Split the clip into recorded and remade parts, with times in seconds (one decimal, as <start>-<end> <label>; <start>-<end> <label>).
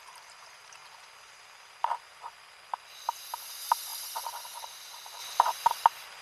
0.0-0.8 remade; 0.8-3.2 recorded; 3.2-5.2 remade; 5.2-6.2 recorded